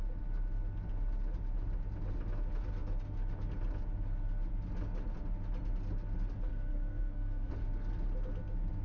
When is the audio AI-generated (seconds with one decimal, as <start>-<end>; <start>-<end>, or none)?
6.5-7.5